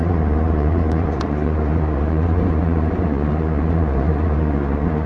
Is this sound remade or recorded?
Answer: remade